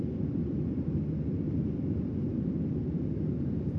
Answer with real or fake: real